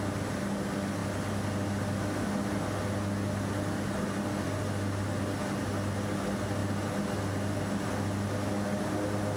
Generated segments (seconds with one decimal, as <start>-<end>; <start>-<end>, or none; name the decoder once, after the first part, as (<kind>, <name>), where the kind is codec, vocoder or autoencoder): none